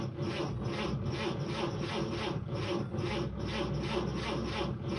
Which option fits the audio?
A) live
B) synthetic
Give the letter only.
A